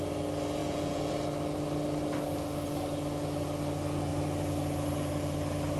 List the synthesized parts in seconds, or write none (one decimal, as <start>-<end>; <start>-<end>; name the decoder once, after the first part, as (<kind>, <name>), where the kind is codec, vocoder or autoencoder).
0.6-1.1 (vocoder, Vocos)